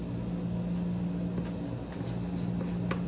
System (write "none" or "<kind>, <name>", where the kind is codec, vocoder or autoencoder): none